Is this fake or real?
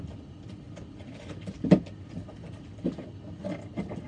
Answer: real